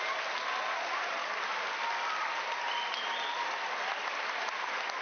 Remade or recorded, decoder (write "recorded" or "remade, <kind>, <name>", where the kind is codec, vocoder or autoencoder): recorded